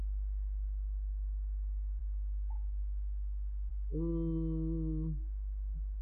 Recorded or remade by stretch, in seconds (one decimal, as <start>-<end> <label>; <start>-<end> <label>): 0.0-6.0 recorded